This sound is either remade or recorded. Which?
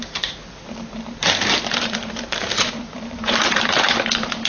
remade